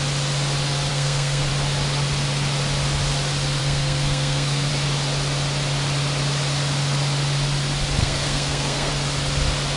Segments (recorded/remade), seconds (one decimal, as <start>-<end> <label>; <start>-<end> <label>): 0.0-0.9 recorded; 0.9-1.5 remade; 1.5-3.6 recorded; 3.6-4.7 remade; 4.7-8.0 recorded; 8.0-8.9 remade; 8.9-9.8 recorded